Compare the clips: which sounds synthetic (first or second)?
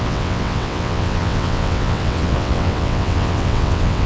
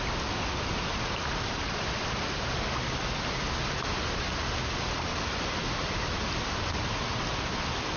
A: first